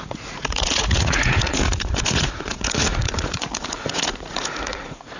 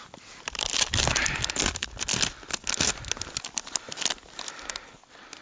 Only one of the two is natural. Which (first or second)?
second